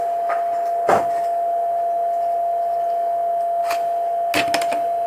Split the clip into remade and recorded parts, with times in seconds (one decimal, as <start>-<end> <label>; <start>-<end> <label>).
0.0-5.1 recorded